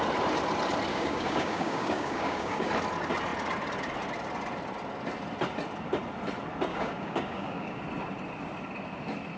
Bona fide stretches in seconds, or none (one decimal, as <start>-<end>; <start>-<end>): 0.0-0.9; 2.7-6.7; 7.8-9.4